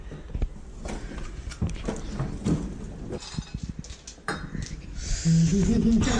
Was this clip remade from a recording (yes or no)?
no